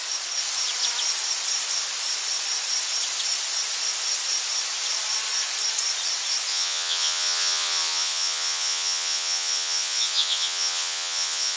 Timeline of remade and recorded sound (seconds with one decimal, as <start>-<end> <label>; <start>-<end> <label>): 0.0-6.5 recorded; 6.5-11.6 remade